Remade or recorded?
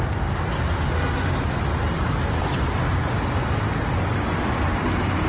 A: recorded